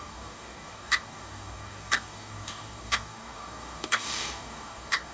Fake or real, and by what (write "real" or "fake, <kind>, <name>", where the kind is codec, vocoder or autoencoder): fake, codec, DAC